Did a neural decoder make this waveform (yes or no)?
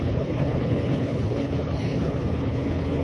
yes